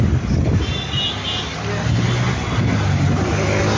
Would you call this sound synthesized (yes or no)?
no